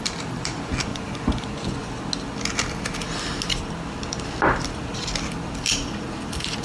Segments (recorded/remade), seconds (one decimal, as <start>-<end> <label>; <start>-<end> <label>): 0.0-0.9 recorded; 0.9-1.9 remade; 1.9-6.6 recorded